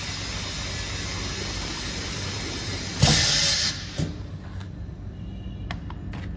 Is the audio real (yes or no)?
yes